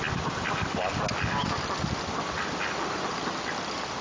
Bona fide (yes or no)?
yes